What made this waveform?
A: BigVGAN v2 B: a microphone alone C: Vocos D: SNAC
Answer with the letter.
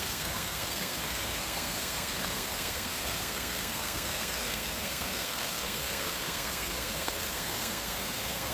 D